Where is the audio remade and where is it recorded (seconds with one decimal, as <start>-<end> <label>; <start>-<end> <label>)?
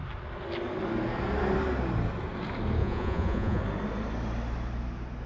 0.0-2.8 recorded; 2.8-3.6 remade; 3.6-5.3 recorded